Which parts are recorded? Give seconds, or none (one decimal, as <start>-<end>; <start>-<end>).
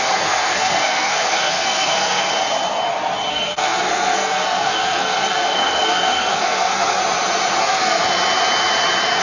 2.3-3.3; 7.0-7.6; 8.0-9.2